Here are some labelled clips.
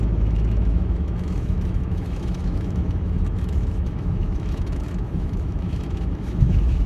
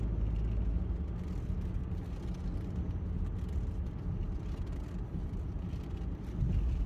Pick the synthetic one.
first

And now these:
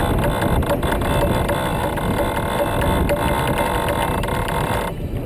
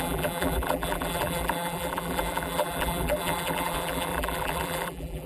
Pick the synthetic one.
second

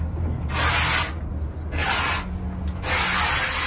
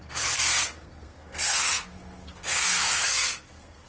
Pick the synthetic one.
second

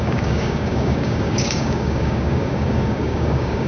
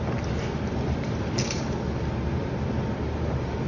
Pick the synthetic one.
first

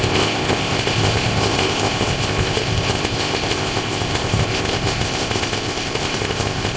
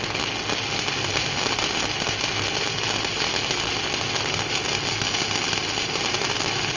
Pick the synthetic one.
first